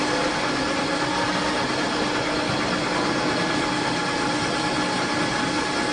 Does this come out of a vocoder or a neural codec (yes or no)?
no